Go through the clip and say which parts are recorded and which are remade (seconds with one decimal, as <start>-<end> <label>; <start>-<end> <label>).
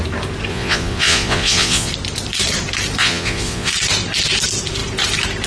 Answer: 0.0-0.5 recorded; 0.5-1.9 remade; 1.9-3.0 recorded; 3.0-3.7 remade; 3.7-5.5 recorded